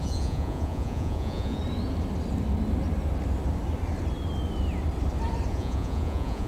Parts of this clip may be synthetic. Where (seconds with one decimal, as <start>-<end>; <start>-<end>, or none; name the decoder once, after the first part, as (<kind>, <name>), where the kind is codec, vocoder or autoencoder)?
0.0-1.6 (vocoder, Vocos); 5.5-6.5